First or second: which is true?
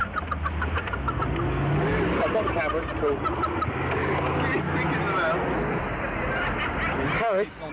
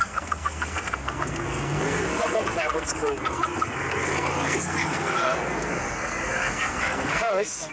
first